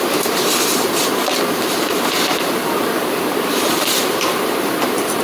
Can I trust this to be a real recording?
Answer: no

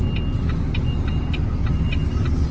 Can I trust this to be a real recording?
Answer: yes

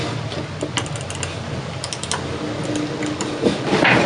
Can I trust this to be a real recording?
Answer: yes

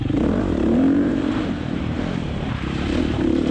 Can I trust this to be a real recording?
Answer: no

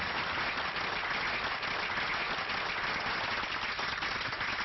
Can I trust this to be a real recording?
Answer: yes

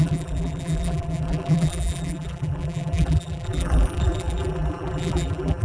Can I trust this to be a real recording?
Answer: no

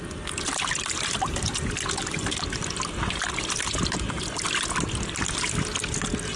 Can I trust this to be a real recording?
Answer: yes